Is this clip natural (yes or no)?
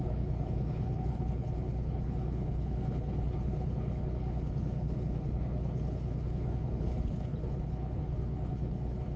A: no